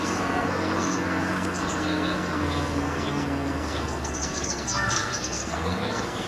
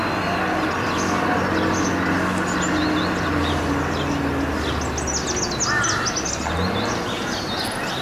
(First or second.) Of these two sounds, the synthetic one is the first